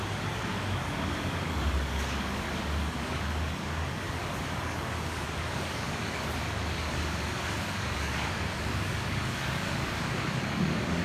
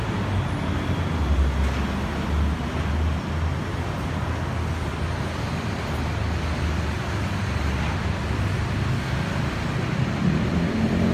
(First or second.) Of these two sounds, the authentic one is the second